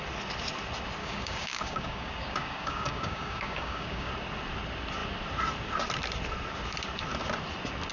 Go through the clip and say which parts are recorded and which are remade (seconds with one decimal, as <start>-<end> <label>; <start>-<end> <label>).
0.0-1.0 recorded; 1.0-4.1 remade; 4.1-7.9 recorded

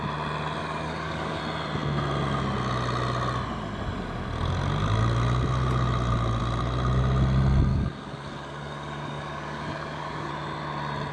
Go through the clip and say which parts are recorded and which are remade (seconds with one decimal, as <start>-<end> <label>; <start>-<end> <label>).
0.0-0.6 recorded; 0.6-1.4 remade; 1.4-7.7 recorded; 7.7-10.3 remade; 10.3-11.1 recorded

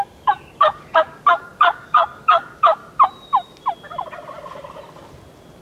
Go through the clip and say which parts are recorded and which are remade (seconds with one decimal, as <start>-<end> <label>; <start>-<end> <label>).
0.0-2.8 remade; 2.8-5.6 recorded

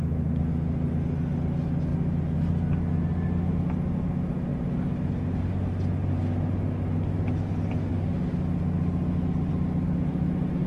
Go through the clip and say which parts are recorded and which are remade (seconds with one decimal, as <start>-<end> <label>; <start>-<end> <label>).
0.0-10.7 recorded

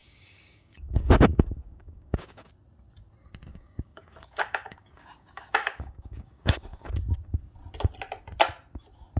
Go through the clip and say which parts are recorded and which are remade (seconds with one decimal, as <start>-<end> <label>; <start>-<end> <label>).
0.0-2.5 remade; 2.5-3.5 recorded; 3.5-7.0 remade; 7.0-9.2 recorded

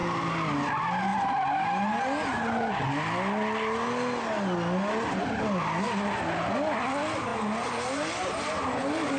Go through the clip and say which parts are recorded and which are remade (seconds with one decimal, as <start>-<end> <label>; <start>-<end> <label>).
0.0-9.2 recorded